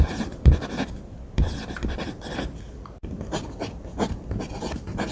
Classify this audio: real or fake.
real